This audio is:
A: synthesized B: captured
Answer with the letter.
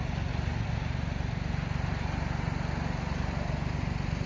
B